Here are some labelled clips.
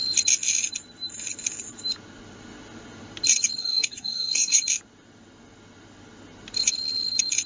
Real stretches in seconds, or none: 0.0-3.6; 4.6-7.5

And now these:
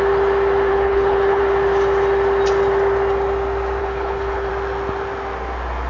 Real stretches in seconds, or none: 0.0-0.7; 1.4-3.8; 4.5-5.9